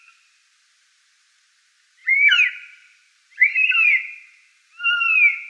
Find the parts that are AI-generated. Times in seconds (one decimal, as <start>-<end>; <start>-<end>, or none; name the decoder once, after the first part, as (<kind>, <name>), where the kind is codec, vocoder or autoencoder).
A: 2.0-3.7 (vocoder, BigVGAN v2)